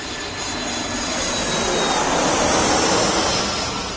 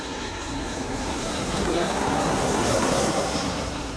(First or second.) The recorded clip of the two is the first